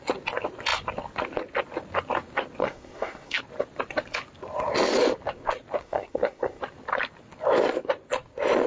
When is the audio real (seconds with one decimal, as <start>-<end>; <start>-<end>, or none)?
0.0-2.6; 3.4-5.8; 6.6-8.7